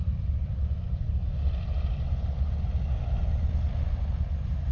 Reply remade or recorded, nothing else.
recorded